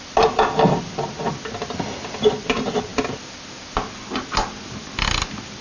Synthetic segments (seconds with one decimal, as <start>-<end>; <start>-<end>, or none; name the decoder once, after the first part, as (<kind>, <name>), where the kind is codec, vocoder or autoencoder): none